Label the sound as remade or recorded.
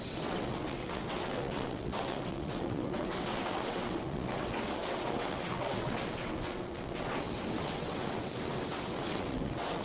remade